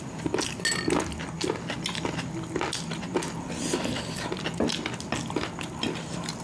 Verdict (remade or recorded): recorded